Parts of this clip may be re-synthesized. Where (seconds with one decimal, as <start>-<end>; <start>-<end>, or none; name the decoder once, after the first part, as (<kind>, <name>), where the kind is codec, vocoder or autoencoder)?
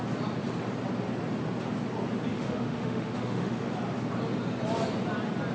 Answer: 2.3-3.7 (autoencoder, DAC-VAE)